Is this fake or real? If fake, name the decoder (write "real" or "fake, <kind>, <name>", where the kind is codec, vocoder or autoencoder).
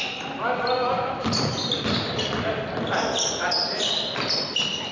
real